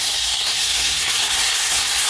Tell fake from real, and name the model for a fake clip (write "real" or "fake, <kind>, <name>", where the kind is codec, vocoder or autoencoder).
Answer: fake, codec, SNAC